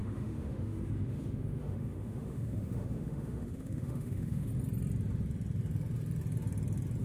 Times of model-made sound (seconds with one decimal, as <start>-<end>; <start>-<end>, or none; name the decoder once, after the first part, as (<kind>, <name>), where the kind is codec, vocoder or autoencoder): 0.0-4.5 (autoencoder, DAC-VAE)